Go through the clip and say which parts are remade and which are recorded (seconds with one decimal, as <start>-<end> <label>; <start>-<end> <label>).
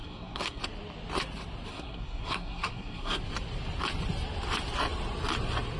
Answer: 0.0-0.6 remade; 0.6-1.7 recorded; 1.7-3.2 remade; 3.2-5.8 recorded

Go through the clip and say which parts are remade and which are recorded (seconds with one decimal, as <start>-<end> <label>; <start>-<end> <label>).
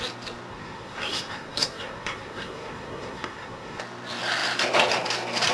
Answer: 0.0-0.5 recorded; 0.5-3.8 remade; 3.8-5.5 recorded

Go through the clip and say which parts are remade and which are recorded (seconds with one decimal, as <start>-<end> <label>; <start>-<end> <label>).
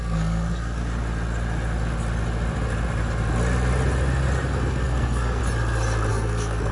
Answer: 0.0-0.8 remade; 0.8-4.7 recorded; 4.7-5.4 remade; 5.4-6.1 recorded; 6.1-6.7 remade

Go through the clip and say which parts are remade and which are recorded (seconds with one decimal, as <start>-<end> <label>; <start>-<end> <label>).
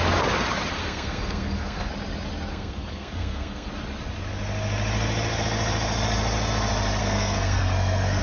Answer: 0.0-0.7 recorded; 0.7-1.9 remade; 1.9-2.5 recorded; 2.5-3.7 remade; 3.7-7.0 recorded; 7.0-8.2 remade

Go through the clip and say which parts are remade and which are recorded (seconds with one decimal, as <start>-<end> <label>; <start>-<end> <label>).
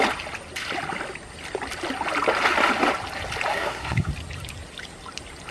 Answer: 0.0-3.5 recorded; 3.5-4.1 remade; 4.1-5.5 recorded